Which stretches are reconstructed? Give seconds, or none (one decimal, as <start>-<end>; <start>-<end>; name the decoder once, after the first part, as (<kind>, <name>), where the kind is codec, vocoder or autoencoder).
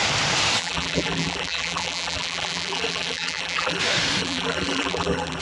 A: 0.6-3.8 (vocoder, BigVGAN v2); 4.2-5.4